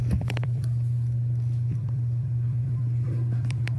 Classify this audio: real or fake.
fake